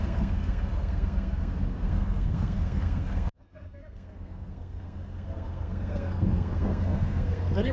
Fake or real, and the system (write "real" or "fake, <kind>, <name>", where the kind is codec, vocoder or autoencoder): fake, codec, SNAC